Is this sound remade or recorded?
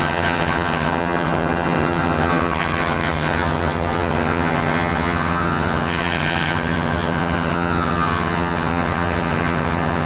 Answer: remade